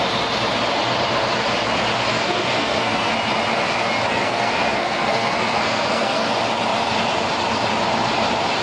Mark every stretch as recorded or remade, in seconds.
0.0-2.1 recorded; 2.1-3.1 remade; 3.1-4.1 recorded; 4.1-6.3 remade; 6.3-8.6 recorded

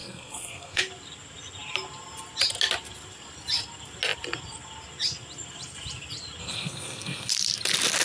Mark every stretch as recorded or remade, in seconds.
0.0-0.8 remade; 0.8-6.4 recorded; 6.4-7.3 remade; 7.3-8.0 recorded

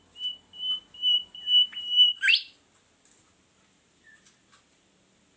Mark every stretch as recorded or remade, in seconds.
0.0-5.4 recorded

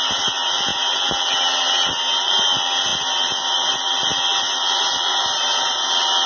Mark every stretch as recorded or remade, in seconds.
0.0-6.3 recorded